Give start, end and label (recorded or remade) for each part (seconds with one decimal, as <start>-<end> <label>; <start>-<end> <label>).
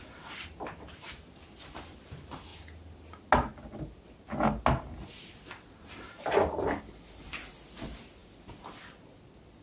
0.0-9.6 recorded